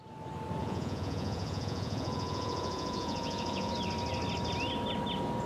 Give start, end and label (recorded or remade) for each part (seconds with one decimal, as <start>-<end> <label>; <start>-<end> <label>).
0.0-0.6 recorded; 0.6-3.7 remade; 3.7-5.5 recorded